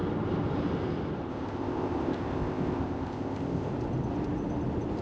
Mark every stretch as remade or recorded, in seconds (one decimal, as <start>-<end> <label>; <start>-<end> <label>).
0.0-1.3 recorded; 1.3-3.7 remade; 3.7-5.0 recorded